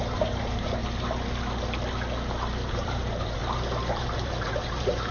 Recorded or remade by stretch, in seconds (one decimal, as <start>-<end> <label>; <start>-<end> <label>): 0.0-0.8 remade; 0.8-2.7 recorded; 2.7-3.4 remade; 3.4-3.9 recorded; 3.9-5.1 remade